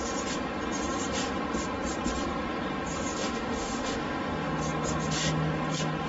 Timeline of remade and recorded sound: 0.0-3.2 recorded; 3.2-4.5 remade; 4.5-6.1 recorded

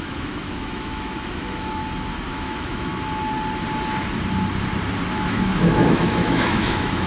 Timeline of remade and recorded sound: 0.0-1.8 remade; 1.8-2.3 recorded; 2.3-2.9 remade; 2.9-5.1 recorded; 5.1-7.1 remade

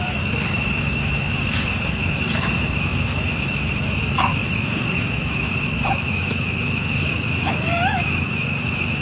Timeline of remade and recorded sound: 0.0-9.0 remade

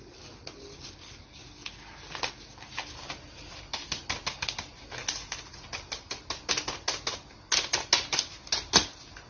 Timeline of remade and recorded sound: 0.0-9.3 recorded

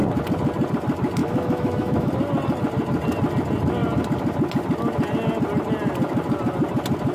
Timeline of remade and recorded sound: 0.0-1.2 recorded; 1.2-2.1 remade; 2.1-7.1 recorded

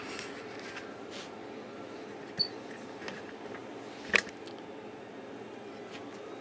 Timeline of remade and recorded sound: 0.0-6.4 recorded